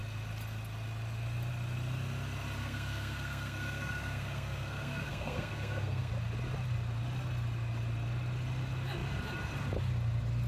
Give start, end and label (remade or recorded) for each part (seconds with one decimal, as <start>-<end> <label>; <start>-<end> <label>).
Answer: 0.0-2.6 recorded; 2.6-6.1 remade; 6.1-10.5 recorded